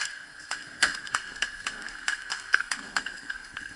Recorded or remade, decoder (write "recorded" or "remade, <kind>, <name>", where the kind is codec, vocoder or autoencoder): remade, codec, SNAC